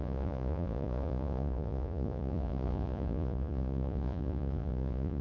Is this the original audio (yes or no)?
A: no